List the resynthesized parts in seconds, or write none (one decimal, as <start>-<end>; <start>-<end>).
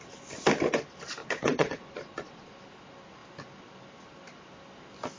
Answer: 1.2-2.5